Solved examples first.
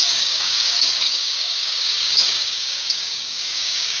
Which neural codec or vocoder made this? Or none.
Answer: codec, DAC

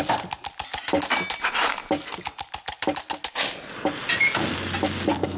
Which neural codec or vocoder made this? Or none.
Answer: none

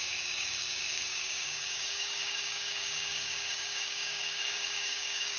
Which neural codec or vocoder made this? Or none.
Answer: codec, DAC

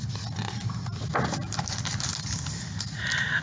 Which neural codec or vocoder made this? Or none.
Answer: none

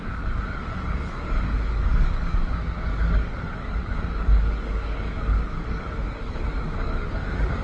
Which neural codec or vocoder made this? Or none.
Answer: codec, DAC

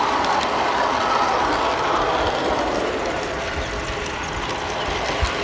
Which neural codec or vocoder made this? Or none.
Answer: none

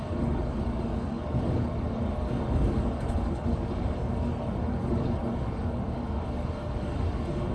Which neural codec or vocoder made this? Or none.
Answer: codec, DAC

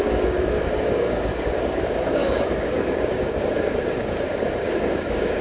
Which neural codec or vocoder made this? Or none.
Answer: codec, DAC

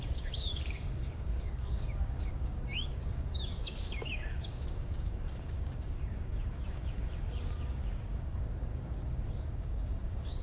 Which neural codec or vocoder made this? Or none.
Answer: codec, DAC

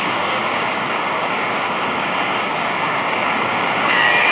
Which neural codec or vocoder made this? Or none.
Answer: codec, DAC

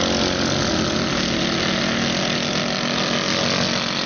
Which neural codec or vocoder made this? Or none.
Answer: none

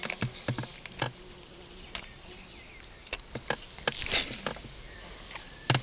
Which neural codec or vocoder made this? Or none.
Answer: none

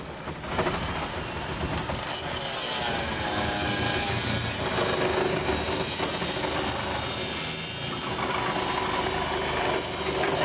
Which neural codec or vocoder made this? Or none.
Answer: none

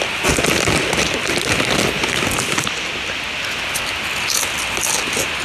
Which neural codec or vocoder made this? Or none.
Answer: none